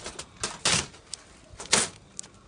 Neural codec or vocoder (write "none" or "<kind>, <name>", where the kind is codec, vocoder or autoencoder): none